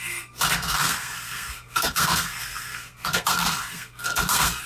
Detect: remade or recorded remade